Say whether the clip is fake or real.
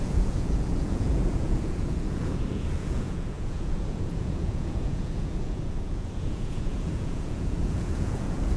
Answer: fake